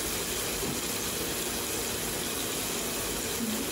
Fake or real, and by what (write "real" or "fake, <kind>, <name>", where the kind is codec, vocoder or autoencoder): real